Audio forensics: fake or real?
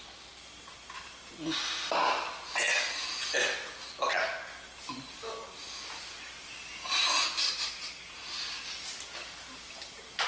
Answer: real